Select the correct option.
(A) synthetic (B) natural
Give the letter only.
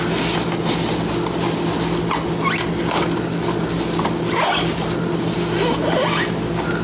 B